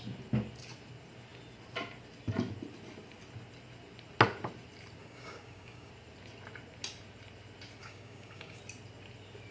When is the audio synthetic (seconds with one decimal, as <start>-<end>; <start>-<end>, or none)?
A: 5.0-5.9; 7.8-8.6